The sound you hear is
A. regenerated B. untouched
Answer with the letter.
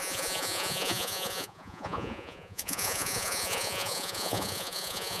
A